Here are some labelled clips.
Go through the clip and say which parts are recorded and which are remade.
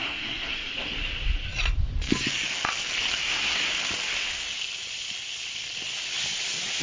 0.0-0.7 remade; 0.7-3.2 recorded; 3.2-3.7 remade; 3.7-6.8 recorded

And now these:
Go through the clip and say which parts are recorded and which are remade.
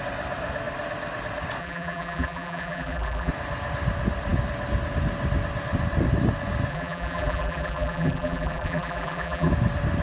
0.0-1.6 recorded; 1.6-3.3 remade; 3.3-6.7 recorded; 6.7-9.5 remade; 9.5-10.0 recorded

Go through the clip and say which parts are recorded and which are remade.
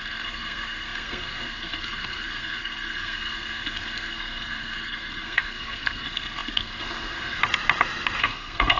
0.0-7.4 remade; 7.4-8.2 recorded; 8.2-8.8 remade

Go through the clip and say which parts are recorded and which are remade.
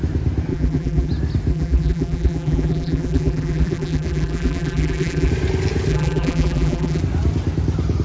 0.0-0.5 recorded; 0.5-1.1 remade; 1.1-1.5 recorded; 1.5-5.3 remade; 5.3-5.9 recorded; 5.9-7.0 remade; 7.0-8.0 recorded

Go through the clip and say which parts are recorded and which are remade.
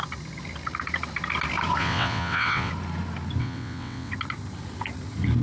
0.0-1.8 recorded; 1.8-2.7 remade; 2.7-3.4 recorded; 3.4-4.1 remade; 4.1-5.4 recorded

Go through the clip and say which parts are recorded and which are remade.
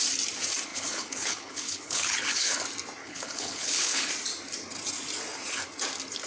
0.0-0.7 recorded; 0.7-2.6 remade; 2.6-3.0 recorded; 3.0-4.1 remade; 4.1-6.3 recorded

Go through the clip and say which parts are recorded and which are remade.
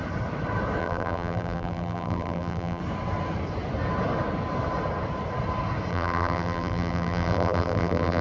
0.0-0.8 recorded; 0.8-2.8 remade; 2.8-5.9 recorded; 5.9-8.2 remade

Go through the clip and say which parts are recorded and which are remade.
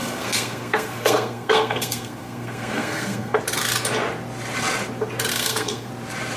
0.0-3.4 remade; 3.4-5.3 recorded; 5.3-5.9 remade; 5.9-6.4 recorded